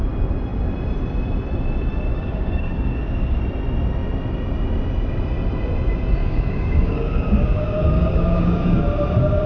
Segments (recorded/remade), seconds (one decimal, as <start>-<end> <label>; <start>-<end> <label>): 0.0-2.1 recorded; 2.1-3.4 remade; 3.4-6.2 recorded; 6.2-8.8 remade; 8.8-9.5 recorded